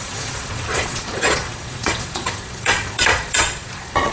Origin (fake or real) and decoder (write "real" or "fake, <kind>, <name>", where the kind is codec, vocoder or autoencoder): fake, vocoder, Vocos